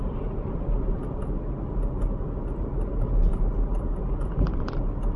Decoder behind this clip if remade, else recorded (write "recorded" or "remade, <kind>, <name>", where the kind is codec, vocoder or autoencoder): recorded